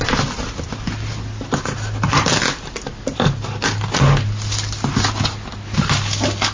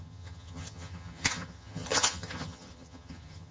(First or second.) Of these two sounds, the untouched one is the first